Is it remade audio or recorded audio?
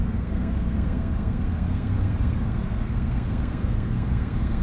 remade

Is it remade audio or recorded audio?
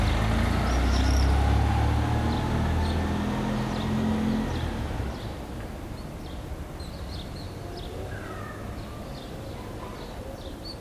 recorded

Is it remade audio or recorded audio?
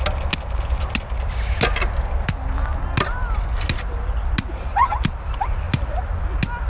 recorded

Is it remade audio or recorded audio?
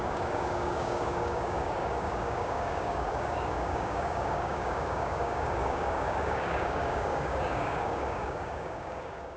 remade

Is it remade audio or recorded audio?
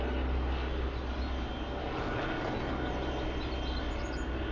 recorded